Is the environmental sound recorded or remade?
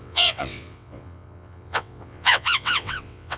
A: remade